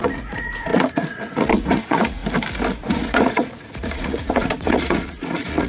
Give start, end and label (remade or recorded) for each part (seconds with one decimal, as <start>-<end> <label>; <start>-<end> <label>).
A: 0.0-2.2 remade; 2.2-2.7 recorded; 2.7-5.7 remade